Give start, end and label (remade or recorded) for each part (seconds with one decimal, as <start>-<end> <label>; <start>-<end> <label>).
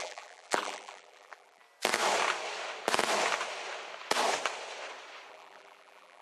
0.0-1.6 remade; 1.6-5.3 recorded; 5.3-6.2 remade